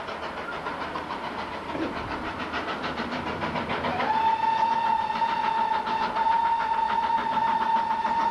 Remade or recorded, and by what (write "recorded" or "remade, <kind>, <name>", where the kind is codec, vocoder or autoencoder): recorded